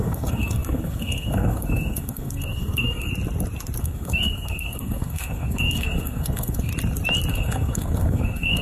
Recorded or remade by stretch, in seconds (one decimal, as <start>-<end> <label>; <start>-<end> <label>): 0.0-3.1 remade; 3.1-3.8 recorded; 3.8-6.7 remade; 6.7-7.3 recorded; 7.3-8.6 remade

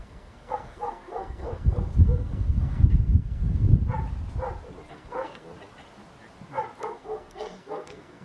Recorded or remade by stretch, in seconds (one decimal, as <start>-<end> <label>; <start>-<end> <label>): 0.0-3.7 remade; 3.7-4.9 recorded; 4.9-5.5 remade; 5.5-6.8 recorded; 6.8-8.2 remade

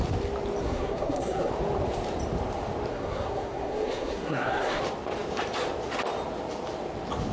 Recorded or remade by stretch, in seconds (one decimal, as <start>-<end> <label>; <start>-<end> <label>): 0.0-0.6 recorded; 0.6-1.5 remade; 1.5-2.9 recorded; 2.9-4.8 remade; 4.8-7.3 recorded

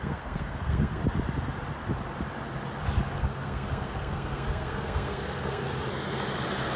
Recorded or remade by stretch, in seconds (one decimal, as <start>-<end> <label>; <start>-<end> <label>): 0.0-1.0 remade; 1.0-3.2 recorded; 3.2-5.6 remade; 5.6-6.8 recorded

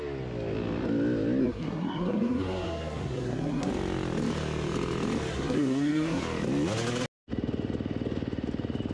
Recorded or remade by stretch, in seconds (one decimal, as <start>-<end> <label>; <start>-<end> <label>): 0.0-1.4 recorded; 1.4-3.7 remade; 3.7-5.3 recorded; 5.3-6.2 remade; 6.2-8.9 recorded